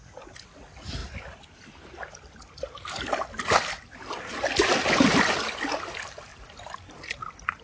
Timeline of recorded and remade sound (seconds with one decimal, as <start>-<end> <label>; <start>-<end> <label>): 0.0-6.3 recorded; 6.3-7.6 remade